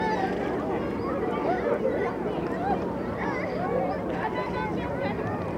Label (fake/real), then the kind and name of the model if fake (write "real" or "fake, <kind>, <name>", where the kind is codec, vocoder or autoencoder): real